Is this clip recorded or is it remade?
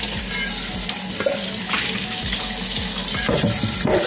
recorded